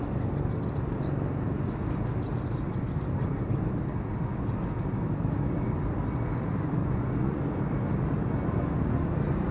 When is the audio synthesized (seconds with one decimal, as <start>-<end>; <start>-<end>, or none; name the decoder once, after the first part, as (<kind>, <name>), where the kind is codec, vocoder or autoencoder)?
6.8-7.4 (vocoder, Vocos)